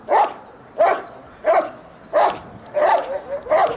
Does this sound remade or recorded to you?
recorded